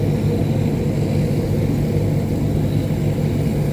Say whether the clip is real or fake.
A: real